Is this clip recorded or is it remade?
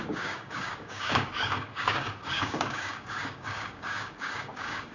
remade